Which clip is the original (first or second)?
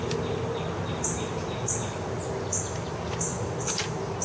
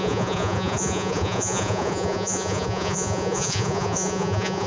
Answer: first